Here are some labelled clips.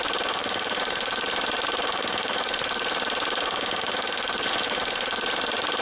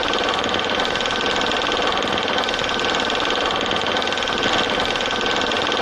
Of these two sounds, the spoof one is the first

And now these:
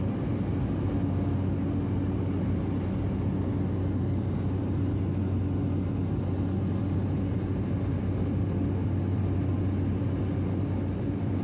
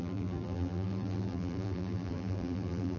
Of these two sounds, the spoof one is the second